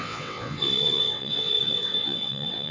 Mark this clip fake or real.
fake